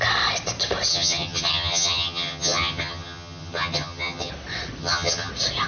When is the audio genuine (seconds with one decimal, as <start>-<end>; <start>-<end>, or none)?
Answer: 0.0-0.9; 4.3-4.8; 5.3-5.7